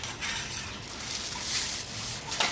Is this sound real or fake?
real